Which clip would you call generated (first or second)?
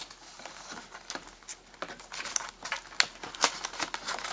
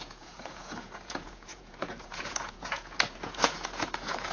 second